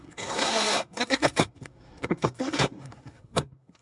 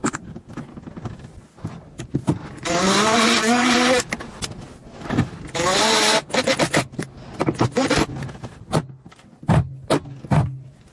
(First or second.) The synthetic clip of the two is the first